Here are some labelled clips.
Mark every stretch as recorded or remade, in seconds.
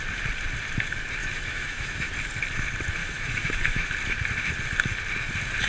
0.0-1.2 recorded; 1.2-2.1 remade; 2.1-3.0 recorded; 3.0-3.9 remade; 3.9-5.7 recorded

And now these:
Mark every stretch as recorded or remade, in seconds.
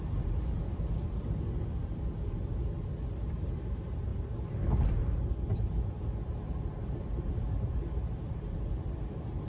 0.0-9.5 recorded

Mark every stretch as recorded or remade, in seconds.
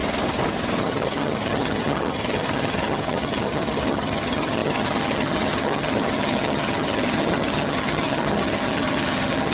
0.0-0.8 recorded; 0.8-9.5 remade